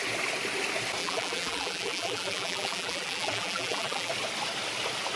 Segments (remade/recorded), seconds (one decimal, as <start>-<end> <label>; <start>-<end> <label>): 0.0-1.0 recorded; 1.0-4.1 remade; 4.1-5.2 recorded